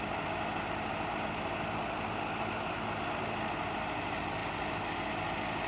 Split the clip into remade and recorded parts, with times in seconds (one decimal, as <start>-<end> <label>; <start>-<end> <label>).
0.0-5.7 recorded